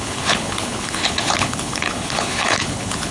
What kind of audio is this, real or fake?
fake